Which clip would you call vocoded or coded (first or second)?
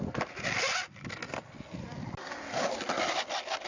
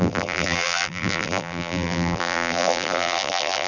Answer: second